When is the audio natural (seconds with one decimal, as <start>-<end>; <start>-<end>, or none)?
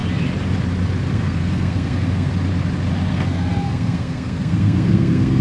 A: 0.0-1.1; 2.3-3.1